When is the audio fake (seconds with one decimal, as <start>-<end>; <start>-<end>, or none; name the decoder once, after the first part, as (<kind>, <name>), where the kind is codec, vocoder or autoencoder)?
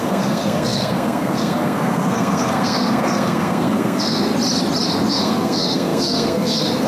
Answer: 0.0-4.3 (codec, SNAC); 5.1-6.9